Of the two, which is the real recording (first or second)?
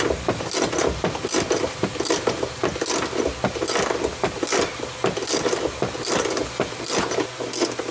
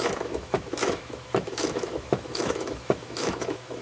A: first